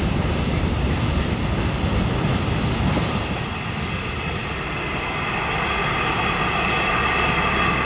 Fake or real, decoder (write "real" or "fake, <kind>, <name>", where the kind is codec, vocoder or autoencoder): real